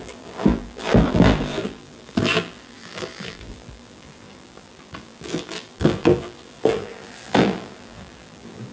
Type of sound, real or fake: fake